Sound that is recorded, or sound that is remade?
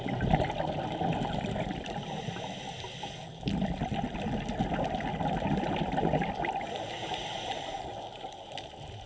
recorded